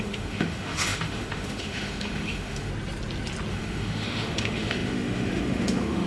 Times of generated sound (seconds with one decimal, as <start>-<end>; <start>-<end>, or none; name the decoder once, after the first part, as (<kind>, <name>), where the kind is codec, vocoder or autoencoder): 0.0-2.7 (autoencoder, DAC-VAE); 3.5-6.1